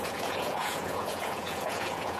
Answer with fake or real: fake